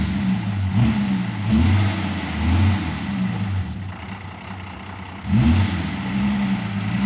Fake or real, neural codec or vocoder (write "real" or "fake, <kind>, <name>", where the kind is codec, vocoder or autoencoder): real